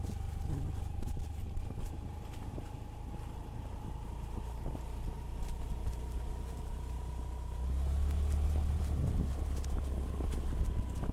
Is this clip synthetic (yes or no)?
no